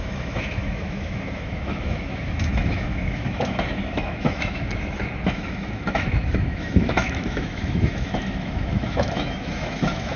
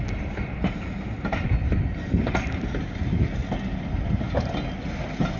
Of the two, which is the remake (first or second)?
first